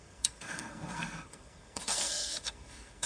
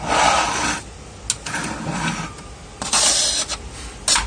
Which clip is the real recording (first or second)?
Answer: second